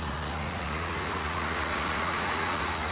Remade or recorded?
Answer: remade